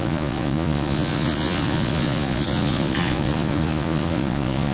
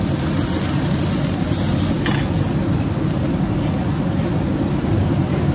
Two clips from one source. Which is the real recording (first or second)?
second